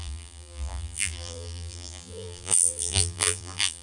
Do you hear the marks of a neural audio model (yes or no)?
yes